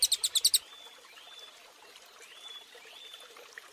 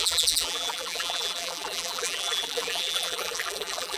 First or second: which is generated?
second